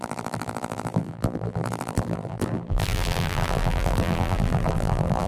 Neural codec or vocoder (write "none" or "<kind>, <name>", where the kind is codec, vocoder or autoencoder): vocoder, BigVGAN v2